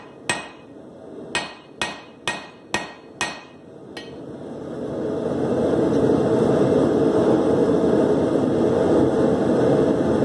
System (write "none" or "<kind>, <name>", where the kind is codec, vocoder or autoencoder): none